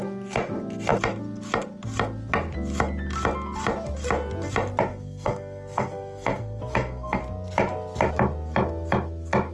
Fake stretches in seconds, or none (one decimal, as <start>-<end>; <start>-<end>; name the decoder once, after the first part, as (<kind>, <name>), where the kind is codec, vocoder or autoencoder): 4.9-7.2 (codec, SNAC)